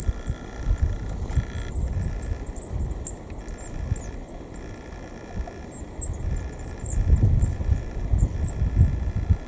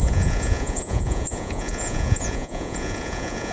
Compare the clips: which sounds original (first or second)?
first